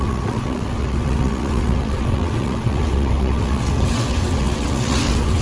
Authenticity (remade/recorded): remade